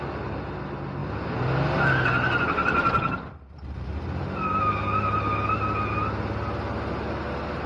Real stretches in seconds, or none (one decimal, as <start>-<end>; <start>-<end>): 0.0-7.7